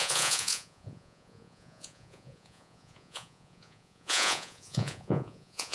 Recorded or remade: remade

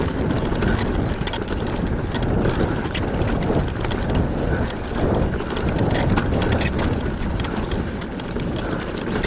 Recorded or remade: recorded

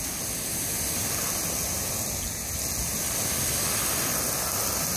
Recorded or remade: recorded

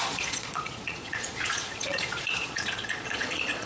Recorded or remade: remade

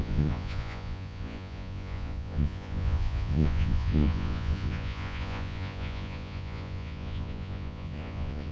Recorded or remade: remade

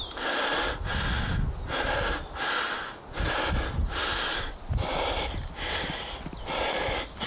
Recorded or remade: recorded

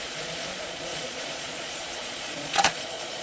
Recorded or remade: remade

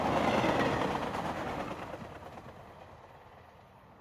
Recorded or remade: recorded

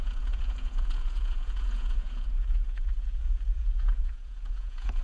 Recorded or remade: remade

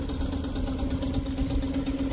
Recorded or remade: recorded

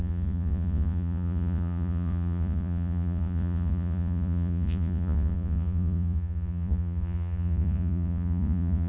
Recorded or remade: remade